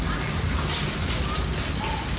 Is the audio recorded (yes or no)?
yes